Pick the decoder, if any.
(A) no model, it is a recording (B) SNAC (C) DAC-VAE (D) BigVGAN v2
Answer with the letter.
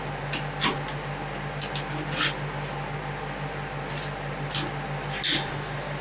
A